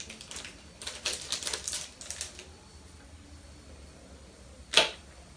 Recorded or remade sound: recorded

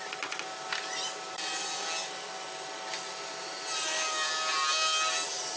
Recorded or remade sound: recorded